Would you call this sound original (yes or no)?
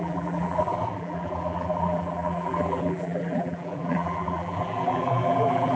no